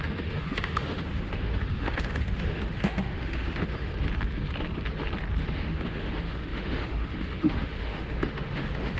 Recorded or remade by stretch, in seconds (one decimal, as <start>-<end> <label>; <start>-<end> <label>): 0.0-3.9 remade; 3.9-5.4 recorded; 5.4-9.0 remade